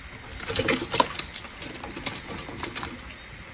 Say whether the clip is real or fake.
real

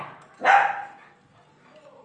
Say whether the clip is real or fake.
real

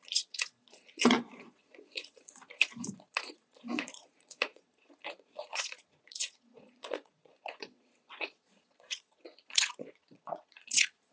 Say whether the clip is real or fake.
fake